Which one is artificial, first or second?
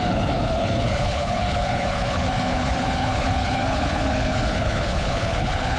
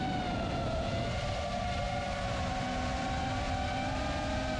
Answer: first